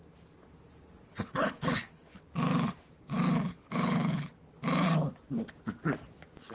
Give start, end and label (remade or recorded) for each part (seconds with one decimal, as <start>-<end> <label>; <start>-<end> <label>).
0.0-1.1 recorded; 1.1-2.2 remade; 2.2-3.5 recorded; 3.5-4.4 remade; 4.4-6.5 recorded